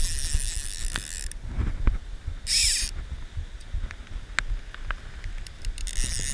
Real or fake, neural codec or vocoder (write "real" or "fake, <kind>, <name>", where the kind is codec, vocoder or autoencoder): real